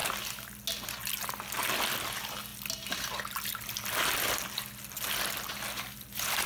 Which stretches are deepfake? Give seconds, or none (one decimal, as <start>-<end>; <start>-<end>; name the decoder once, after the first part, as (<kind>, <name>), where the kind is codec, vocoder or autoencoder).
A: none